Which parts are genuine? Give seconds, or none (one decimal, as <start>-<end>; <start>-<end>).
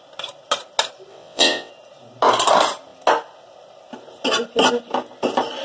0.0-1.1; 1.7-5.6